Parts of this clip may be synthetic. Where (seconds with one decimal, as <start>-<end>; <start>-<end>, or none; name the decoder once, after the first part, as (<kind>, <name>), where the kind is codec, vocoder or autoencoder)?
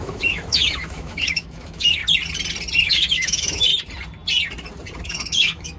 0.0-2.0 (autoencoder, DAC-VAE); 2.9-3.7; 5.0-5.8